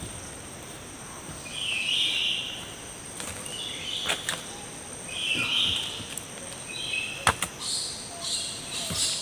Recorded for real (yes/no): yes